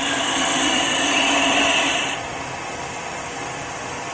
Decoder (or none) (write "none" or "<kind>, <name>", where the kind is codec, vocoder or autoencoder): vocoder, BigVGAN v2